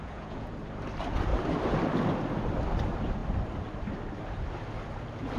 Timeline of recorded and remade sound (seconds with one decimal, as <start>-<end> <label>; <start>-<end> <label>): 0.0-0.5 remade; 0.5-5.4 recorded